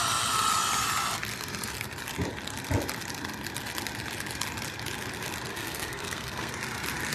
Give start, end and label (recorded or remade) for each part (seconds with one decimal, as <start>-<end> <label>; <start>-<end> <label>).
0.0-5.5 recorded; 5.5-6.5 remade; 6.5-7.1 recorded

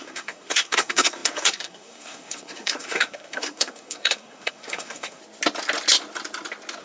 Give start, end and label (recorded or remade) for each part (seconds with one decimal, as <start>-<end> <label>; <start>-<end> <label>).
0.0-5.2 remade; 5.2-6.8 recorded

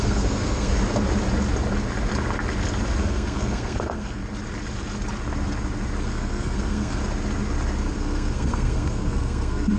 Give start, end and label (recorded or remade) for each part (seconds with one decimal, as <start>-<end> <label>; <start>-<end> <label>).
0.0-0.7 remade; 0.7-3.0 recorded; 3.0-4.2 remade; 4.2-6.0 recorded; 6.0-7.0 remade; 7.0-7.8 recorded; 7.8-9.8 remade

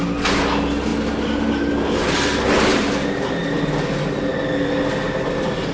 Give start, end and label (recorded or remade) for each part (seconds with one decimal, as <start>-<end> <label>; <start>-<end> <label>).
0.0-5.7 recorded

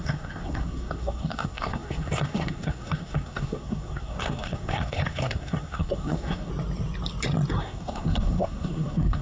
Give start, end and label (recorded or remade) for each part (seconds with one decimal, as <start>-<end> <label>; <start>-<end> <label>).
0.0-6.5 remade; 6.5-7.6 recorded; 7.6-9.2 remade

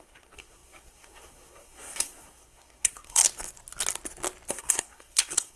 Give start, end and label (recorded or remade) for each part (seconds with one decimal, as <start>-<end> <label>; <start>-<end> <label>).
0.0-3.2 remade; 3.2-4.5 recorded; 4.5-5.6 remade

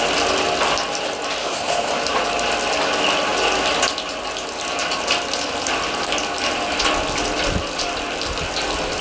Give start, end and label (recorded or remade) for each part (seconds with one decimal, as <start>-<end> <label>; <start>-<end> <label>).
0.0-1.4 recorded; 1.4-1.9 remade; 1.9-9.0 recorded

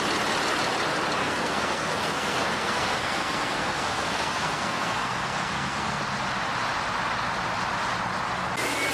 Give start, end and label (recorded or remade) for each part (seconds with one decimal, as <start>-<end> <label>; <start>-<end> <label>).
0.0-1.2 recorded; 1.2-6.0 remade; 6.0-8.9 recorded